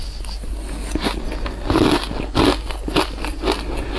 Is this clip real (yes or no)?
yes